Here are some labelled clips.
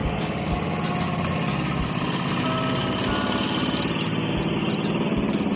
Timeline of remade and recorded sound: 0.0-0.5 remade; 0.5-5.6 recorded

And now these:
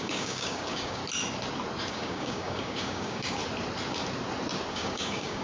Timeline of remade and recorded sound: 0.0-1.0 remade; 1.0-1.9 recorded; 1.9-3.4 remade; 3.4-4.7 recorded; 4.7-5.4 remade